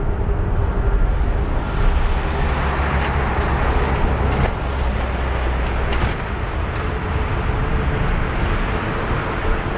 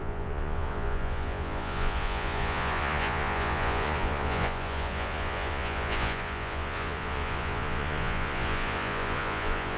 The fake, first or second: second